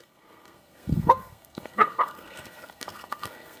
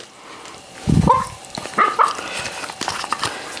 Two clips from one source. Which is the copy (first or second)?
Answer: first